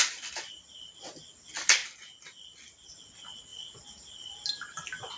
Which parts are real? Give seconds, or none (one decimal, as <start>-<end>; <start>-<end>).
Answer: 0.0-5.2